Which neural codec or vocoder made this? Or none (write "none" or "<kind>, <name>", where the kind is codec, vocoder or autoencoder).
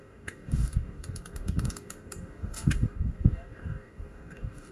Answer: codec, DAC